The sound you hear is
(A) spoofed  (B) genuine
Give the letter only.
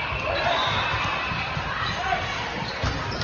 B